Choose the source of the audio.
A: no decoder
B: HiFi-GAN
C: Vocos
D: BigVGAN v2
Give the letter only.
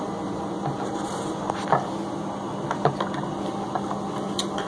A